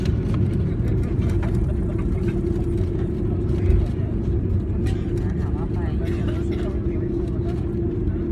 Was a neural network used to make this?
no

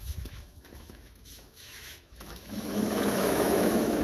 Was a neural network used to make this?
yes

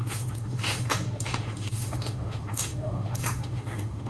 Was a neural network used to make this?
yes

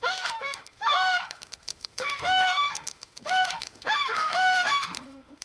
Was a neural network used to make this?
yes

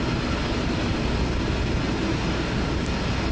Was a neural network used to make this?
no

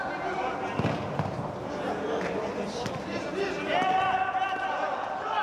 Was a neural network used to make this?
no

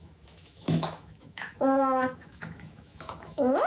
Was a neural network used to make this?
yes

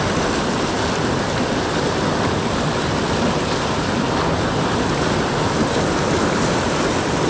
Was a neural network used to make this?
no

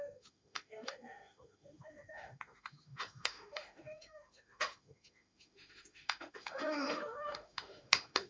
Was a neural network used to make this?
yes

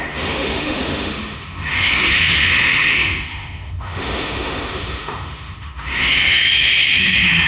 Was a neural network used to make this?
yes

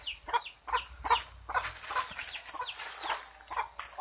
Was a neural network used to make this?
no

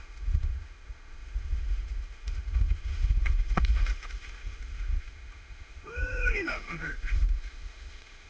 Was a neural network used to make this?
yes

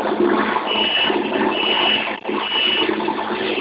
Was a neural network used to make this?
no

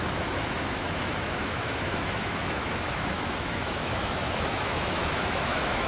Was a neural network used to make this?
yes